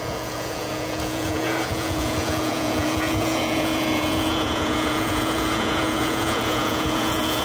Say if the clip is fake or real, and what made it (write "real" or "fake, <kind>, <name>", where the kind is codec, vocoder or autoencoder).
fake, vocoder, Vocos